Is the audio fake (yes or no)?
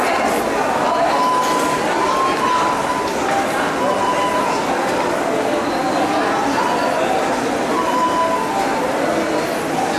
no